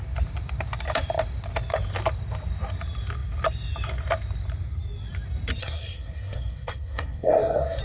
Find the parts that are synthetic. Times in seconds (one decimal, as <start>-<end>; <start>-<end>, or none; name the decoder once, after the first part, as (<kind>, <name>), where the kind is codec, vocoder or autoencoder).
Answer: 5.6-7.8 (codec, SNAC)